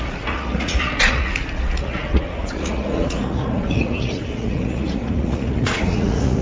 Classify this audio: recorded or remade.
remade